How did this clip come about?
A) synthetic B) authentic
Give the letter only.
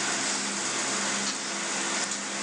B